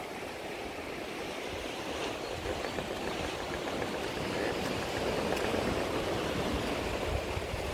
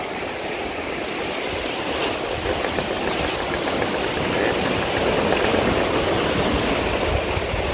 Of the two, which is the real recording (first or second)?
second